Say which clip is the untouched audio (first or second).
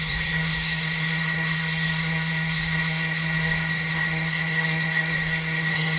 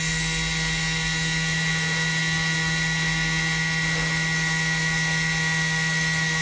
second